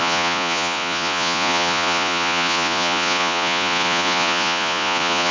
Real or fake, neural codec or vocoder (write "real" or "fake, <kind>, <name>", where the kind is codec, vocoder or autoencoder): fake, vocoder, Vocos